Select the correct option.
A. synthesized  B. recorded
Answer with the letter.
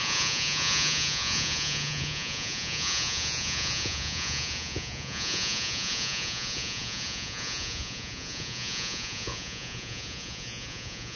A